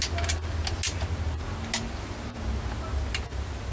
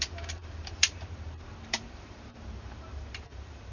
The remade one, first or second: second